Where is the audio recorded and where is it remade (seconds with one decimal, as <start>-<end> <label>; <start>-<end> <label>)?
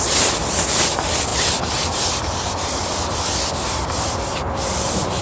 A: 0.0-5.2 recorded